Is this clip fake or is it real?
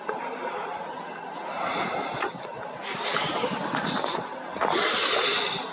real